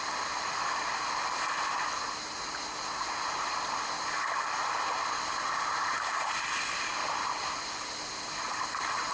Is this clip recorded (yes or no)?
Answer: yes